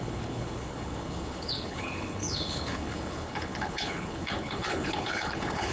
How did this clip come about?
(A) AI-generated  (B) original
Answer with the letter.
A